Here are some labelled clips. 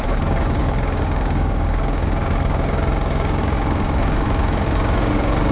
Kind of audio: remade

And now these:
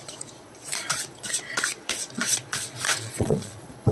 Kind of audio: remade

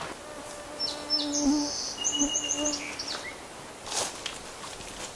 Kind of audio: recorded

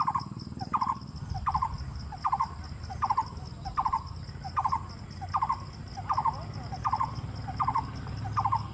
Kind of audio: recorded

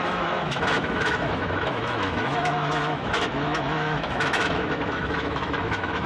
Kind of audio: remade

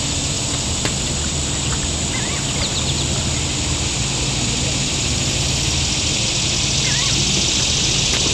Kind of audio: recorded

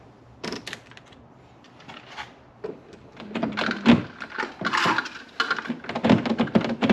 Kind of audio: recorded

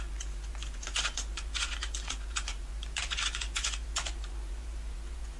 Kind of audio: remade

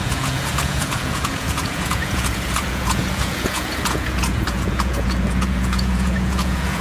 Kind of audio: remade